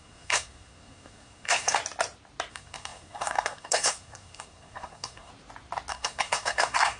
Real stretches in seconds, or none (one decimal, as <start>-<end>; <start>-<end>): 1.8-2.5; 5.3-5.9